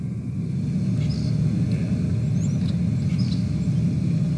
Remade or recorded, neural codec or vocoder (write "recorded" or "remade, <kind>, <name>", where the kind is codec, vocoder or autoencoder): recorded